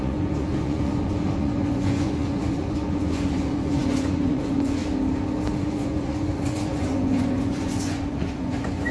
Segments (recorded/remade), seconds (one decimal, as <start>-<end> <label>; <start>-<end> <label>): 0.0-4.8 remade; 4.8-5.6 recorded; 5.6-8.9 remade